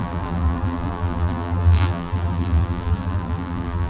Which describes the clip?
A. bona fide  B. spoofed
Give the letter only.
B